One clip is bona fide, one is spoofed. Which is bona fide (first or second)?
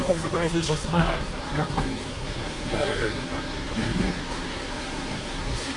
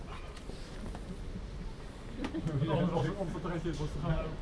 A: second